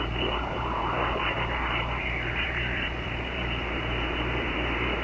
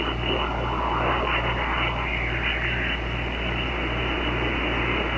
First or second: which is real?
second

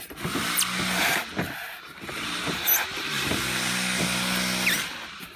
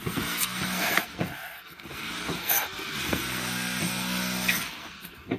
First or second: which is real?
first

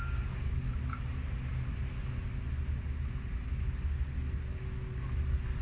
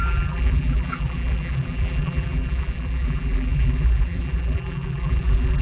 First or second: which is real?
first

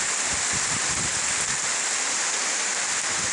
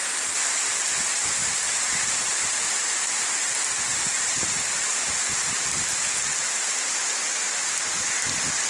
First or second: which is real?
first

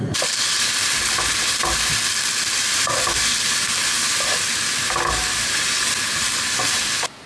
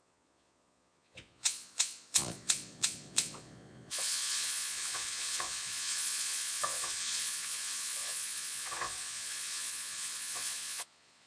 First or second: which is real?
first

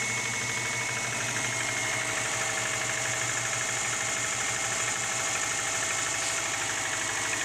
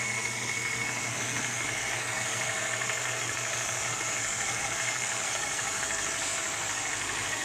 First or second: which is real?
first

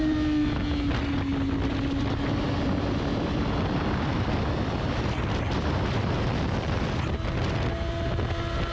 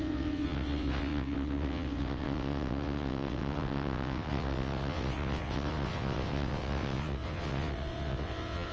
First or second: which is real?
first